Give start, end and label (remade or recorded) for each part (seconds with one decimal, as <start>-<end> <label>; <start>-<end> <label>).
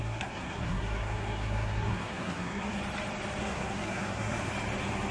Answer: 0.0-2.8 remade; 2.8-3.4 recorded; 3.4-4.5 remade; 4.5-5.1 recorded